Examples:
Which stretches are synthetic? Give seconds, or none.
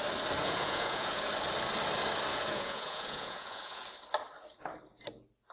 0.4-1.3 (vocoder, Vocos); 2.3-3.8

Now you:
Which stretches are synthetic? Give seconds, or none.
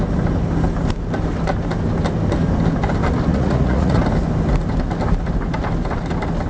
3.3-4.0 (vocoder, Vocos)